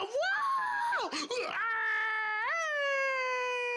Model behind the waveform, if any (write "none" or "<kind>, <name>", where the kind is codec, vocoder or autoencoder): none